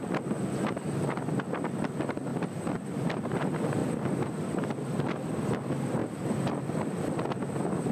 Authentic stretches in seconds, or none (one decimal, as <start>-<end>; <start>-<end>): 0.0-2.3; 3.2-3.8; 5.5-6.0; 7.5-7.9